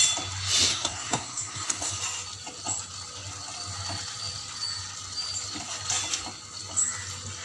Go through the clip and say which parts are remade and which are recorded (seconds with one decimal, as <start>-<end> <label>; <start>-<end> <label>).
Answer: 0.0-0.7 recorded; 0.7-2.0 remade; 2.0-7.4 recorded